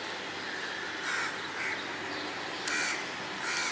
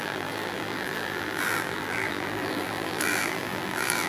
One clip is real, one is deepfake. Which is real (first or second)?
first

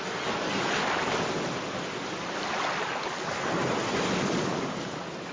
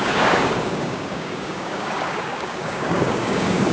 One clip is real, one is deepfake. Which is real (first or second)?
first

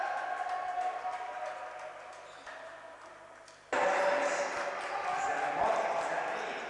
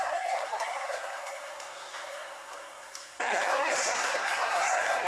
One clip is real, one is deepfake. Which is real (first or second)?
first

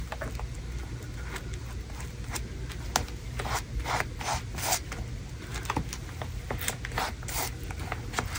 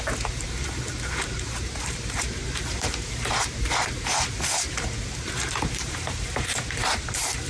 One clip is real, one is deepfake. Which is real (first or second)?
first